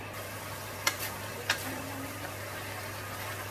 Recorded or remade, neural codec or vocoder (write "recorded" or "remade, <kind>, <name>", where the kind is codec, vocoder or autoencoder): recorded